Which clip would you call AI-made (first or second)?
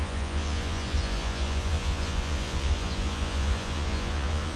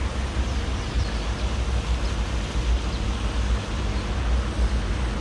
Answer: first